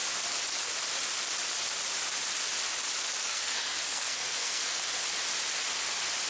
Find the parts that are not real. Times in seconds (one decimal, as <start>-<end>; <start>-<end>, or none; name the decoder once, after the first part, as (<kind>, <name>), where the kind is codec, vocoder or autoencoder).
3.2-4.8 (codec, SNAC)